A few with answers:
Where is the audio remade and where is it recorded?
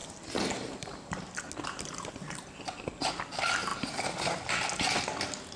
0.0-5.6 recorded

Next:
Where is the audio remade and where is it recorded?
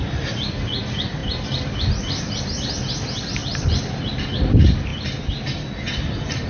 0.0-1.2 recorded; 1.2-2.4 remade; 2.4-3.4 recorded; 3.4-4.2 remade; 4.2-6.5 recorded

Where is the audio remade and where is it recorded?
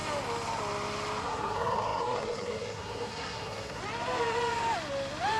0.0-1.2 recorded; 1.2-3.8 remade; 3.8-5.4 recorded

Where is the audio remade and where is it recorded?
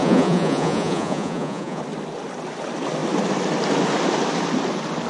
0.0-1.8 remade; 1.8-5.1 recorded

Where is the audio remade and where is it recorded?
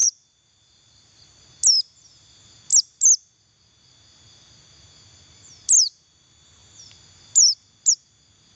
0.0-1.4 remade; 1.4-8.6 recorded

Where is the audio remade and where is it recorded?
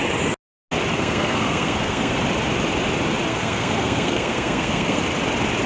0.0-0.9 recorded; 0.9-2.2 remade; 2.2-3.3 recorded; 3.3-5.0 remade; 5.0-5.7 recorded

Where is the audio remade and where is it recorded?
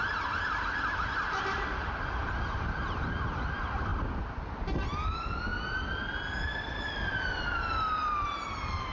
0.0-3.9 remade; 3.9-4.5 recorded; 4.5-5.5 remade; 5.5-6.3 recorded; 6.3-8.9 remade